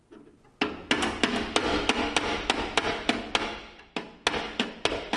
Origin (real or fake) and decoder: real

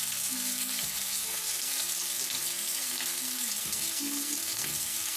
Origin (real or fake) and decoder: fake, codec, SNAC